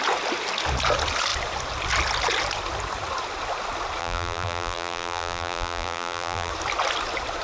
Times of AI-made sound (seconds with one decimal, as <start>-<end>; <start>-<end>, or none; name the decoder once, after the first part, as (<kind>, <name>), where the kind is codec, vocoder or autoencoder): 4.0-6.5 (vocoder, BigVGAN v2)